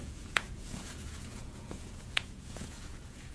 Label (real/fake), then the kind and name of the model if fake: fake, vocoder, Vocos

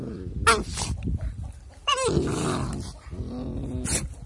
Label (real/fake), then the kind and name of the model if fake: real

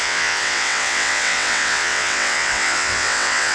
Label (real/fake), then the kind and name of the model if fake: fake, vocoder, WaveNeXt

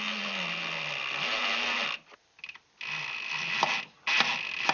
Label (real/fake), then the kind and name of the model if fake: real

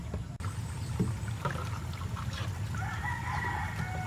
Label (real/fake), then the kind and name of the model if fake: real